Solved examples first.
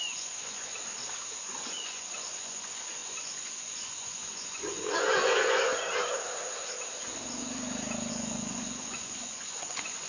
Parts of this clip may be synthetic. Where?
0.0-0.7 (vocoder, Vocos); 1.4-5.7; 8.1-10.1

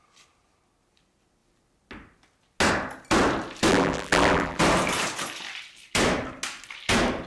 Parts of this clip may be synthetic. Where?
3.7-4.6 (vocoder, BigVGAN v2)

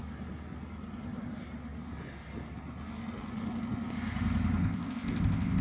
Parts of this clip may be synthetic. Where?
4.6-5.6 (codec, ZipCodec)

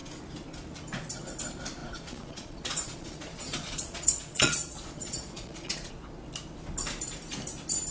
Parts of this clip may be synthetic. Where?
1.8-5.9 (vocoder, Vocos)

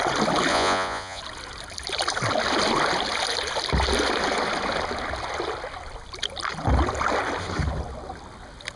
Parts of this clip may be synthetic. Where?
0.5-1.2 (vocoder, Vocos)

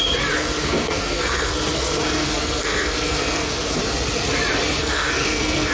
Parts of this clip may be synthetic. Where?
0.4-3.8 (codec, SNAC); 4.8-5.7